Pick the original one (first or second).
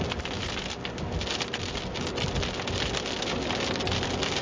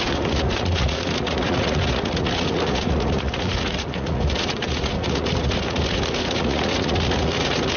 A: first